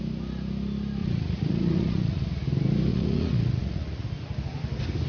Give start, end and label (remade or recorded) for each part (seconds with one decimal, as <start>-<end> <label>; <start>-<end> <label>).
0.0-1.0 recorded; 1.0-2.2 remade; 2.2-2.9 recorded; 2.9-4.0 remade; 4.0-5.1 recorded